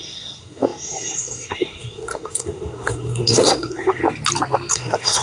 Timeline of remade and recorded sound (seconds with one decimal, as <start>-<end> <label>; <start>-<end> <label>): 0.0-4.0 remade; 4.0-4.7 recorded; 4.7-5.2 remade